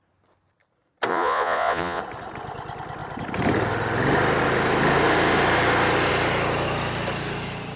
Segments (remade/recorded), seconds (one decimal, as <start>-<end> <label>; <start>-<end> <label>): 0.0-1.1 recorded; 1.1-2.0 remade; 2.0-7.8 recorded